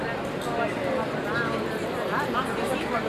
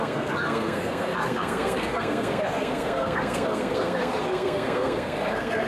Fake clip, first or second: second